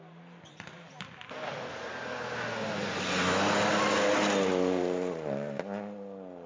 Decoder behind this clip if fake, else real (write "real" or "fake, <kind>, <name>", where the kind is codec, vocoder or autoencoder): real